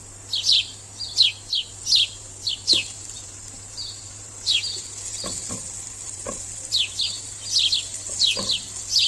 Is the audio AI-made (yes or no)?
no